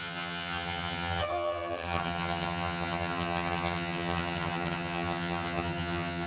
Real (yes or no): no